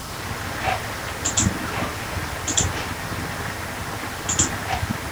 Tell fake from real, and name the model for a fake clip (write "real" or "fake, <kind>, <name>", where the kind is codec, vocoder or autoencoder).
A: real